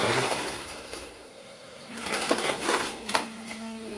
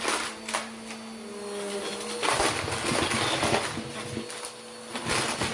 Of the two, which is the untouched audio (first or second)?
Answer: second